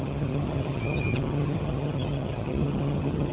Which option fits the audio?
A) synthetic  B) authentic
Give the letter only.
A